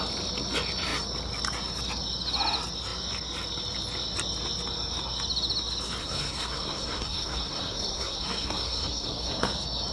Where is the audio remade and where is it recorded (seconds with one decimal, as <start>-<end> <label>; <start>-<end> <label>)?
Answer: 0.0-6.0 recorded; 6.0-9.4 remade; 9.4-9.9 recorded